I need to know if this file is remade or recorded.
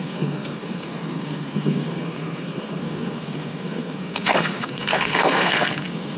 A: remade